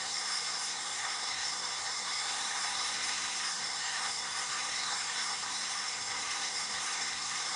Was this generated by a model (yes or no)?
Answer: yes